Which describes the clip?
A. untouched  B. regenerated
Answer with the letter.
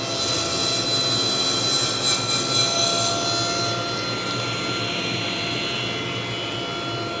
A